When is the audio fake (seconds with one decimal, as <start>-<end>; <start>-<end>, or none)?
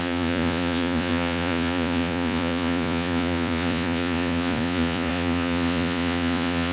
0.0-6.7